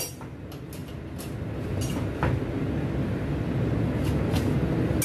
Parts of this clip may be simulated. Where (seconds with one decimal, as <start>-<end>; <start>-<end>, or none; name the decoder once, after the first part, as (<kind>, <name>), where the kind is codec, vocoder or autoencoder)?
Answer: none